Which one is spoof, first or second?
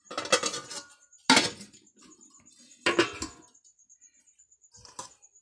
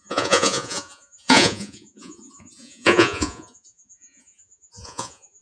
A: second